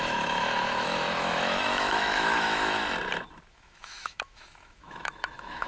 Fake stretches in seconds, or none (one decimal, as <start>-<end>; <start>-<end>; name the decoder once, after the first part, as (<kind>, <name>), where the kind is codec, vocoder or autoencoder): 0.0-2.8 (autoencoder, DAC-VAE); 3.5-5.7